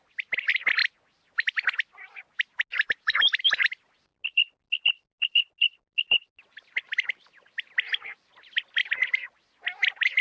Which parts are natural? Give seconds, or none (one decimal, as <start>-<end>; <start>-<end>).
0.0-10.2